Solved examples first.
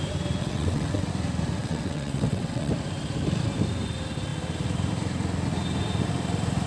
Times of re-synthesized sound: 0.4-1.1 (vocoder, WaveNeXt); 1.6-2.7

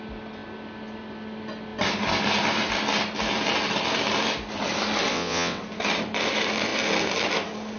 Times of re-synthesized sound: 5.1-5.6 (vocoder, WaveNeXt)